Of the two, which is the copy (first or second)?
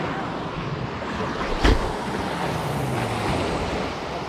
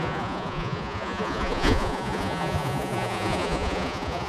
second